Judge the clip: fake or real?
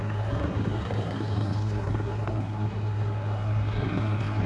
fake